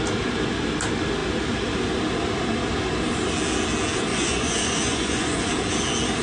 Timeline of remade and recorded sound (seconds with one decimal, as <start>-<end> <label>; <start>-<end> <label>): 0.0-4.1 recorded; 4.1-5.5 remade; 5.5-6.2 recorded